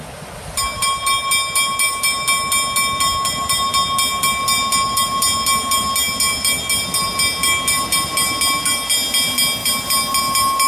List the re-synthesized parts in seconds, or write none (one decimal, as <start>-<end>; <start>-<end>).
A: none